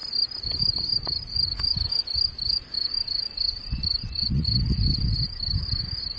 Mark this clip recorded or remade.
remade